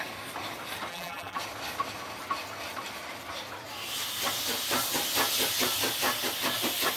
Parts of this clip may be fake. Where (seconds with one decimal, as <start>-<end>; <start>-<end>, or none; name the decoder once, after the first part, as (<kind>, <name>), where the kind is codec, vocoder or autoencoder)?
0.9-1.4 (vocoder, BigVGAN v2)